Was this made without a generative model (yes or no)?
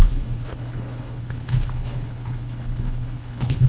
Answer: no